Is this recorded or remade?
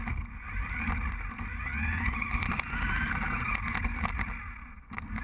recorded